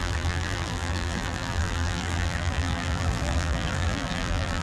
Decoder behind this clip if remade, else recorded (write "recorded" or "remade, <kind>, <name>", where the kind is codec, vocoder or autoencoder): remade, vocoder, BigVGAN v2